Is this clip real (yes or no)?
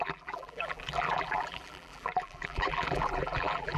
no